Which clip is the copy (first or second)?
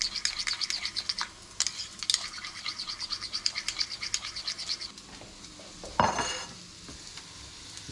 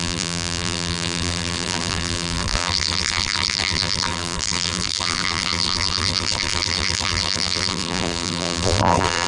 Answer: second